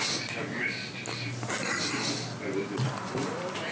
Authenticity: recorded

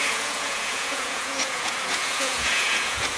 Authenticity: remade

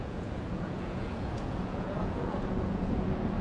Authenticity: remade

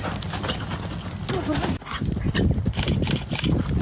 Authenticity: recorded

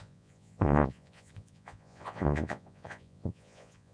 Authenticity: remade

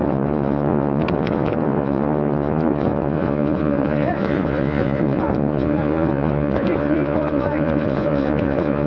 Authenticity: remade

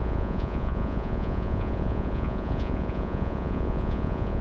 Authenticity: remade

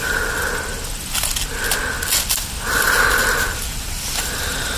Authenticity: recorded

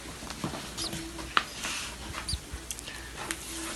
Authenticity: recorded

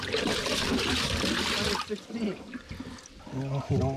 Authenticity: recorded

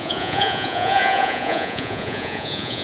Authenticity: remade